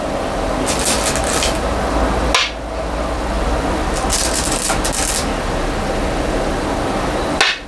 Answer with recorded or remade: recorded